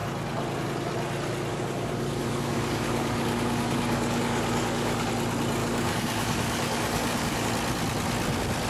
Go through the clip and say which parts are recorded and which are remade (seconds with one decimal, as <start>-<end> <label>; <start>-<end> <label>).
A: 0.0-1.5 recorded; 1.5-5.1 remade; 5.1-5.6 recorded; 5.6-7.5 remade; 7.5-8.7 recorded